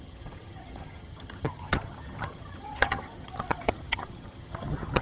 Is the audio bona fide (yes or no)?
no